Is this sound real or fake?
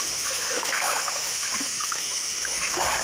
fake